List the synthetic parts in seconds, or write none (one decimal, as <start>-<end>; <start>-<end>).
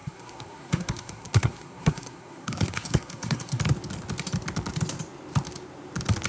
0.0-3.6